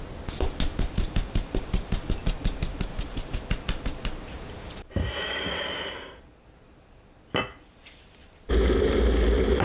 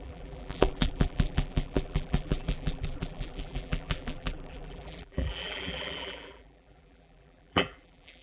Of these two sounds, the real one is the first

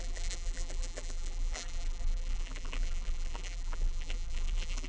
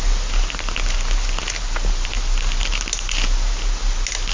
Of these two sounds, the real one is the second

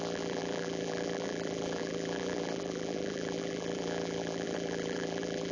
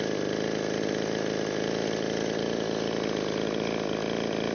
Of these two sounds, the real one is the second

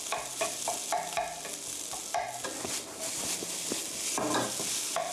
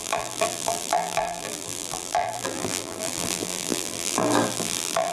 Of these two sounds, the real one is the first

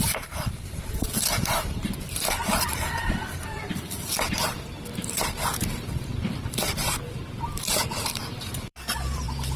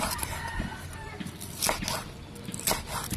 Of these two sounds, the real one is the second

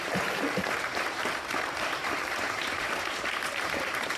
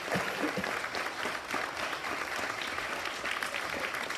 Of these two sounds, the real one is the second